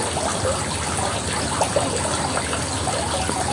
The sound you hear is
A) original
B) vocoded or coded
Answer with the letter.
A